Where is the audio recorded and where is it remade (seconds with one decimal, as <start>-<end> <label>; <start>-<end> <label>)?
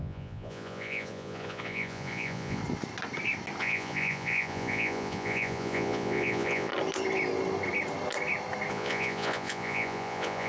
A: 0.0-2.6 remade; 2.6-3.6 recorded; 3.6-6.7 remade; 6.7-8.7 recorded; 8.7-10.5 remade